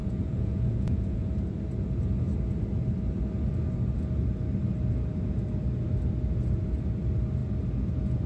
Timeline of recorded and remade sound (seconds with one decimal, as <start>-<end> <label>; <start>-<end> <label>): 0.0-1.3 remade; 1.3-8.3 recorded